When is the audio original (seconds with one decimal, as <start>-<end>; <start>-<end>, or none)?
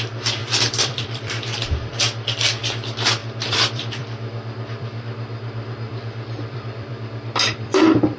0.0-0.4; 2.0-3.2